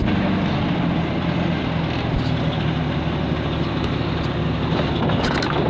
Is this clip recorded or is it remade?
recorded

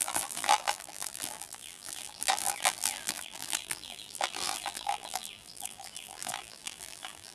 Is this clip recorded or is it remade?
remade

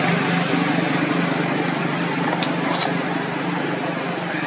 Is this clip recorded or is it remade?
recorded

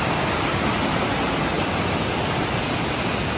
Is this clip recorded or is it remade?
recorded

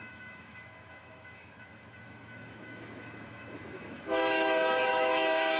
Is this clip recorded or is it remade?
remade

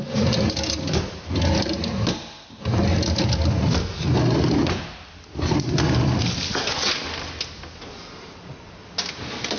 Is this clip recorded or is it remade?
recorded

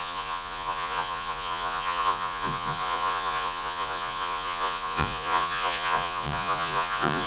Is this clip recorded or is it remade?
remade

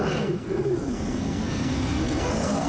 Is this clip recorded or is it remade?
remade